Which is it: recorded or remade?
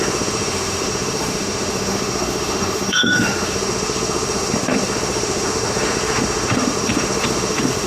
remade